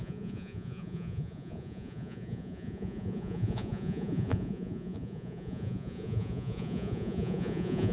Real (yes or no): no